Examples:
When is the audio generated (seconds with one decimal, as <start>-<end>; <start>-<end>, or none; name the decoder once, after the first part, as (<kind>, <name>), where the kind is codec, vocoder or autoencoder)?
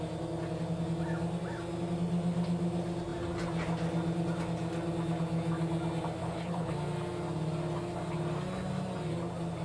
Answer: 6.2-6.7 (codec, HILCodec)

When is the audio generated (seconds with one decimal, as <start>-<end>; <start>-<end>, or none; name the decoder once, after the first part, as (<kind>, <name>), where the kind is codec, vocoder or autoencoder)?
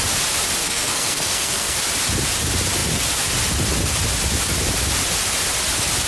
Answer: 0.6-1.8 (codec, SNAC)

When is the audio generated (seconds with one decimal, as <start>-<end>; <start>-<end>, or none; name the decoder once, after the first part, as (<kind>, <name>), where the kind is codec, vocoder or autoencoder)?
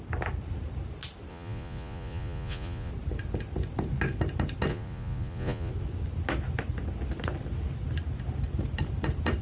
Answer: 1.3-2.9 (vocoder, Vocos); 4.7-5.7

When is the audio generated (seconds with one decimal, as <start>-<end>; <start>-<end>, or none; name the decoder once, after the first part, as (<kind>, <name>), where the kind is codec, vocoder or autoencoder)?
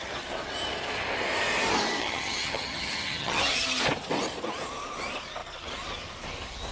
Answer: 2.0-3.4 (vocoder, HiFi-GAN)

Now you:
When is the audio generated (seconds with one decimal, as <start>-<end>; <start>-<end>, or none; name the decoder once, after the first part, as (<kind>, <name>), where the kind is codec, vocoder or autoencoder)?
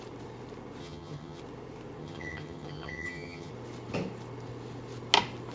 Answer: 0.8-1.4 (vocoder, HiFi-GAN); 2.0-3.5